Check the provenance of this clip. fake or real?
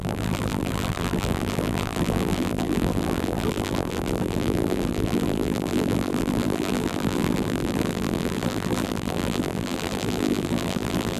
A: fake